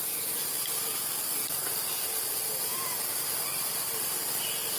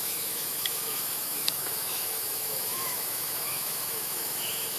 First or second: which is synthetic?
second